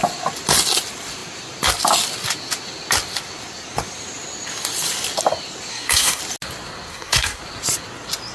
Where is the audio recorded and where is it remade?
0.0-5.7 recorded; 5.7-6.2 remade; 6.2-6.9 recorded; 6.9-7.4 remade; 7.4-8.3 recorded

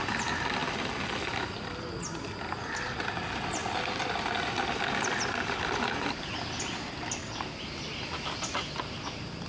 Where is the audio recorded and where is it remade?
0.0-9.5 recorded

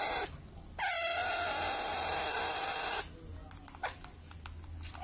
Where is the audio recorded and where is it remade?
0.0-5.0 recorded

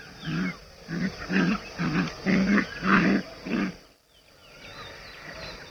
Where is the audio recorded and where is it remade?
0.0-5.7 recorded

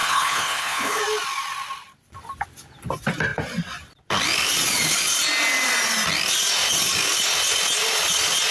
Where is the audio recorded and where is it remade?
0.0-1.0 remade; 1.0-8.5 recorded

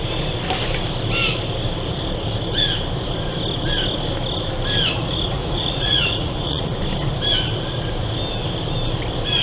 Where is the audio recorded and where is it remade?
0.0-4.9 recorded; 4.9-6.8 remade; 6.8-9.4 recorded

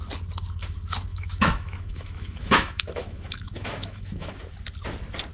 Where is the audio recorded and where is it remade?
0.0-1.1 recorded; 1.1-4.3 remade; 4.3-5.3 recorded

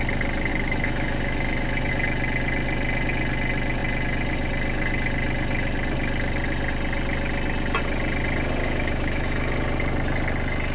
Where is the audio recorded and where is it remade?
0.0-0.5 recorded; 0.5-1.9 remade; 1.9-8.6 recorded; 8.6-9.5 remade; 9.5-10.7 recorded